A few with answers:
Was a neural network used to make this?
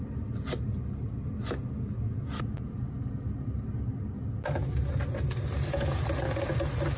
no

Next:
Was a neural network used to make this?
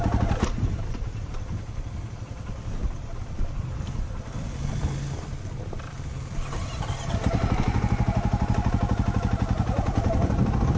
no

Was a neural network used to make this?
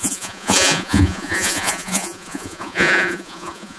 yes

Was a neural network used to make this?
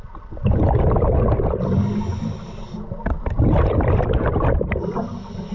no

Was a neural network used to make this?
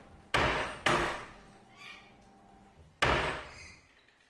no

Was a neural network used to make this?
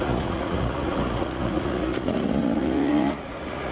yes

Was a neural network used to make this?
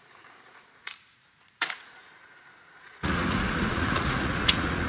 yes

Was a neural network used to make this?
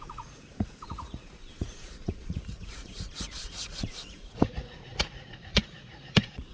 yes